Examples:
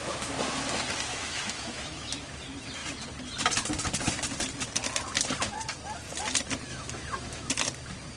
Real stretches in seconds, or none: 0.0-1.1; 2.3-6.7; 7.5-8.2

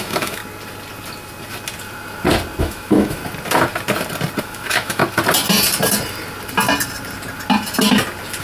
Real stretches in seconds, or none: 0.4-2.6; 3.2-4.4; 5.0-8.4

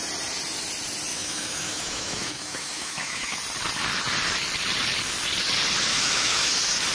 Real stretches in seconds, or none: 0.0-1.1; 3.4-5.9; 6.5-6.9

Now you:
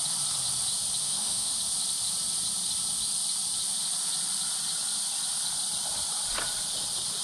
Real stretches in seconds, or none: 0.0-1.0; 1.6-7.2

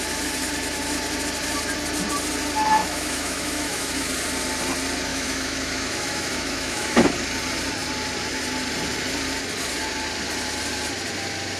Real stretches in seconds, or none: 0.0-2.8; 4.1-5.1; 7.1-11.6